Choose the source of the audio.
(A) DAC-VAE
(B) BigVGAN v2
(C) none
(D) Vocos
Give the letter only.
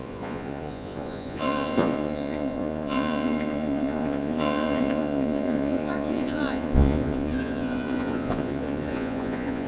D